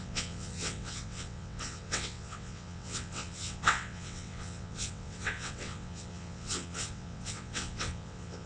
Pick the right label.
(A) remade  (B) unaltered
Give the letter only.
A